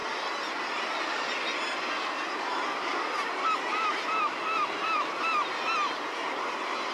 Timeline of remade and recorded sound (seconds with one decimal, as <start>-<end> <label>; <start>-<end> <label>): 0.0-2.4 recorded; 2.4-6.9 remade